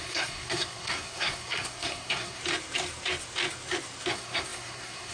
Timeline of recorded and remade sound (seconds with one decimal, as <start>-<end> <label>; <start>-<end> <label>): 0.0-2.4 remade; 2.4-4.1 recorded; 4.1-5.1 remade